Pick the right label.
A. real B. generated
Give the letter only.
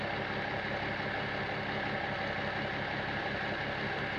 A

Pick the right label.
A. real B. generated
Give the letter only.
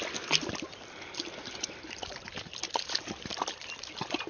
A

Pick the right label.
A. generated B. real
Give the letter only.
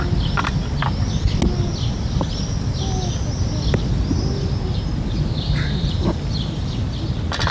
B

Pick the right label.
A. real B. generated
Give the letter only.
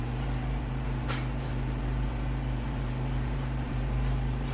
B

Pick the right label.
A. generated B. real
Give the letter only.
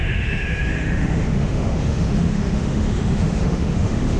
A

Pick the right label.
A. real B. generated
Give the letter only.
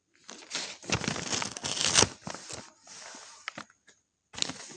A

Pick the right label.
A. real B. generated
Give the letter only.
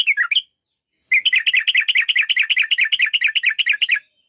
A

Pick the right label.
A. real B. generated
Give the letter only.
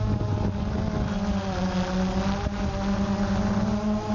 A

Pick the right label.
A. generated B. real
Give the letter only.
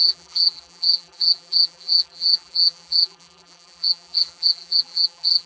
A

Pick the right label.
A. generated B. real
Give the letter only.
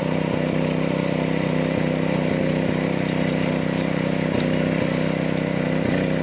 B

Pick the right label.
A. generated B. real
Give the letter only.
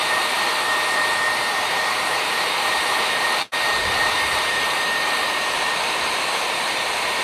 A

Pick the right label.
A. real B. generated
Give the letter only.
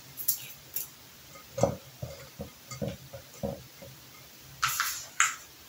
A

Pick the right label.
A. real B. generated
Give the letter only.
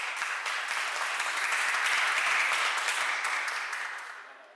A